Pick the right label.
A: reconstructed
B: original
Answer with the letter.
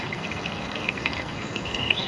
A